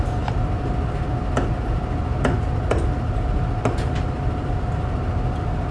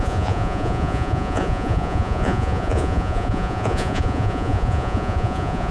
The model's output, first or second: second